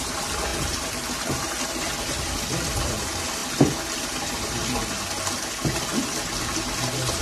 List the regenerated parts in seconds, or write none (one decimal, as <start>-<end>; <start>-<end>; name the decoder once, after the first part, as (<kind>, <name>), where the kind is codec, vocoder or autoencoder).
0.0-0.5 (vocoder, BigVGAN v2); 1.4-3.4; 4.0-4.6; 5.8-7.2

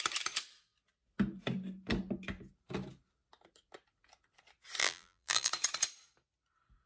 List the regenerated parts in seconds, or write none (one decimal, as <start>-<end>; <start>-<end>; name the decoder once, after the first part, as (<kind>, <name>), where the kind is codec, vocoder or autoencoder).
4.8-5.5 (vocoder, BigVGAN v2)

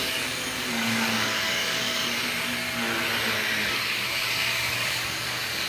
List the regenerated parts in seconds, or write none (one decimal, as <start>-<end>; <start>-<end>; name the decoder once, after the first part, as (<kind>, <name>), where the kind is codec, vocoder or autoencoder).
0.0-2.0 (codec, DAC); 3.7-5.7

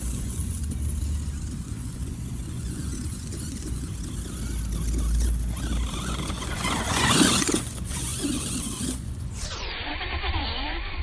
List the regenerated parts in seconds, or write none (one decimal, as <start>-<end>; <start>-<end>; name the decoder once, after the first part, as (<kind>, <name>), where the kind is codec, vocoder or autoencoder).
0.0-0.6 (vocoder, Vocos); 1.6-3.9; 5.9-11.0

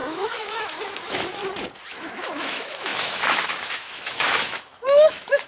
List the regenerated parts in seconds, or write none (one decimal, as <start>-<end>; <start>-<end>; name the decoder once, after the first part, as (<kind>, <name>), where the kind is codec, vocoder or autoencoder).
0.0-1.4 (autoencoder, DAC-VAE); 1.9-5.5

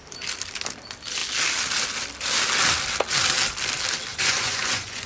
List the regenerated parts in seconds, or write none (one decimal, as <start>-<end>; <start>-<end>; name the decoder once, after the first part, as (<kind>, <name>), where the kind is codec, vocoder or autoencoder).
4.1-5.1 (vocoder, Vocos)

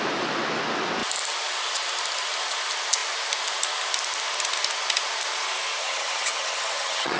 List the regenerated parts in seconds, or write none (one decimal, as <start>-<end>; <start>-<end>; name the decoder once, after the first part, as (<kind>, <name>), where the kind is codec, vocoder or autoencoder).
5.8-7.2 (vocoder, HiFi-GAN)